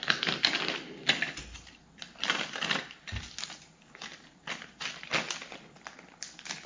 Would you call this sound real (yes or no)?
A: yes